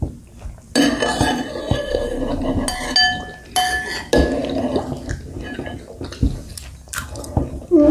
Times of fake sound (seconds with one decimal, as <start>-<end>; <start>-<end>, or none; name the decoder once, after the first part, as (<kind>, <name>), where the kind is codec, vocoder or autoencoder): 1.6-2.2 (codec, SNAC)